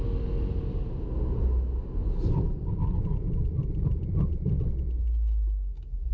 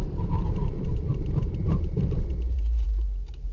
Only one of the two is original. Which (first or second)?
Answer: first